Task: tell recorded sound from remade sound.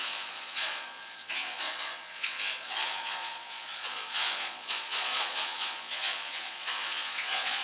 remade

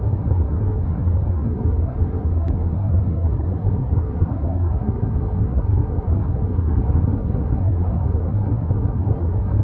remade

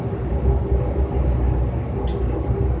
recorded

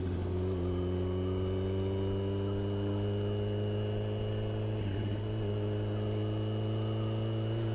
recorded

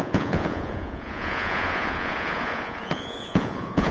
remade